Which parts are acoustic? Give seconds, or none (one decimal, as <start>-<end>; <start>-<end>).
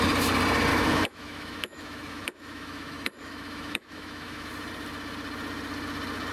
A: 0.0-0.7; 4.5-6.3